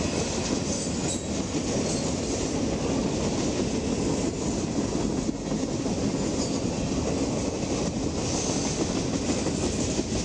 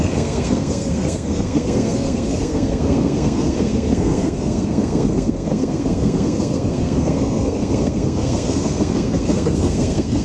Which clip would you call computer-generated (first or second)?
second